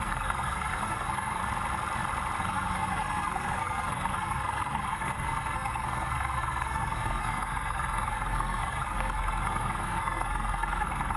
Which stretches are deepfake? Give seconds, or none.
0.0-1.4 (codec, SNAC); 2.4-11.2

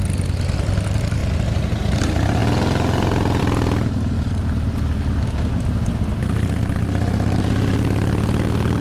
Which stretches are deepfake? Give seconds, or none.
none

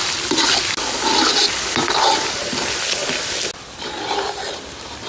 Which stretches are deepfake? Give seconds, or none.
none